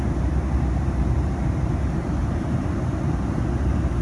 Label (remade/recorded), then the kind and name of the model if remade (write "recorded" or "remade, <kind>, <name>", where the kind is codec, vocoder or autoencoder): remade, vocoder, BigVGAN v2